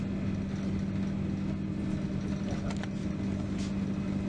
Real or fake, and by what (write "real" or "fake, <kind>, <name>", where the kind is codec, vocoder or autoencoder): real